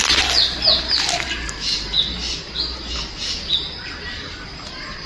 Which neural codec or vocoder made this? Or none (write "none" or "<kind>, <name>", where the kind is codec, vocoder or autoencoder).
none